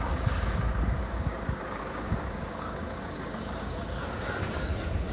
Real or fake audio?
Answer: fake